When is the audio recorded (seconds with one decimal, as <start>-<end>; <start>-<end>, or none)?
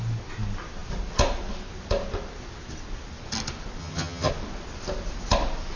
0.0-3.8; 4.3-5.8